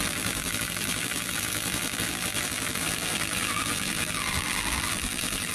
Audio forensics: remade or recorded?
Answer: remade